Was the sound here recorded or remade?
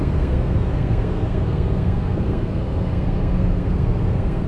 remade